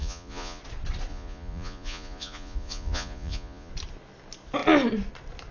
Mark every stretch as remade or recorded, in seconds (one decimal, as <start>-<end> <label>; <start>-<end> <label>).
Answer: 0.0-0.6 remade; 0.6-1.1 recorded; 1.1-3.7 remade; 3.7-5.5 recorded

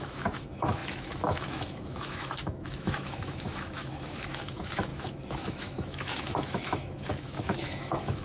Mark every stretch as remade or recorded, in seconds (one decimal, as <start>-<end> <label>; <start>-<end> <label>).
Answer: 0.0-8.2 remade

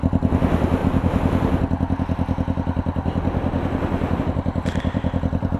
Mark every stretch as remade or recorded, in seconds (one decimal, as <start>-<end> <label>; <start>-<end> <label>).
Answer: 0.0-0.8 remade; 0.8-4.2 recorded; 4.2-5.6 remade

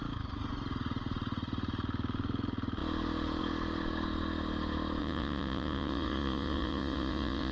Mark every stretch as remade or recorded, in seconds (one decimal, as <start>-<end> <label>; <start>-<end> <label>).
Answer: 0.0-5.0 recorded; 5.0-7.5 remade

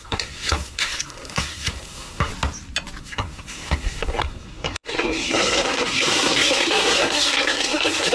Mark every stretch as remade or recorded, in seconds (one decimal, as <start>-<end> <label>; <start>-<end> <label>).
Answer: 0.0-2.3 remade; 2.3-3.0 recorded; 3.0-8.1 remade

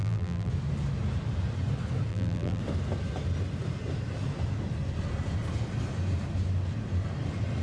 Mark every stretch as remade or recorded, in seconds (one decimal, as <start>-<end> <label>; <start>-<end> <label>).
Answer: 0.0-0.5 remade; 0.5-2.1 recorded; 2.1-2.6 remade; 2.6-7.6 recorded

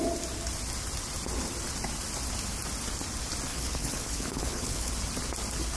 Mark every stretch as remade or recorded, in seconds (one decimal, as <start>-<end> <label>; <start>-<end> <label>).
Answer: 0.0-3.5 recorded; 3.5-4.9 remade; 4.9-5.8 recorded

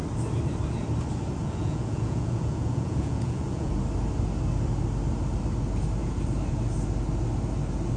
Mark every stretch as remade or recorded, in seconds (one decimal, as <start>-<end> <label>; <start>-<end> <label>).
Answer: 0.0-1.4 recorded; 1.4-3.7 remade; 3.7-8.0 recorded